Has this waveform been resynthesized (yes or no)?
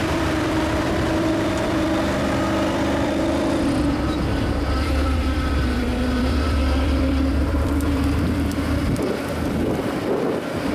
yes